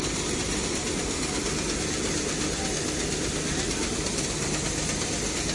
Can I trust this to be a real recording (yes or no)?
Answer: yes